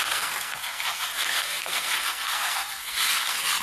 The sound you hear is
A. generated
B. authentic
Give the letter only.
A